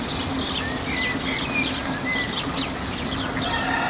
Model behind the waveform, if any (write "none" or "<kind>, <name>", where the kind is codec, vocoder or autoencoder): none